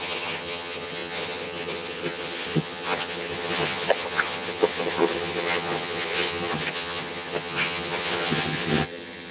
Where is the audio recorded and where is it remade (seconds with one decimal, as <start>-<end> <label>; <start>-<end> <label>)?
0.0-9.3 remade